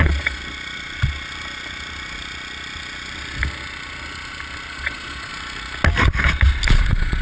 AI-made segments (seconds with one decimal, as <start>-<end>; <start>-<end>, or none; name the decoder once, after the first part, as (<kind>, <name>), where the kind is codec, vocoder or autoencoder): 0.0-0.4 (vocoder, Vocos); 4.7-5.3; 6.7-7.2